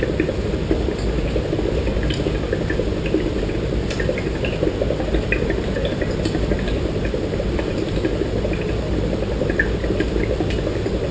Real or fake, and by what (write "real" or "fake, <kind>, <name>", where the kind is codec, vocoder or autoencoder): real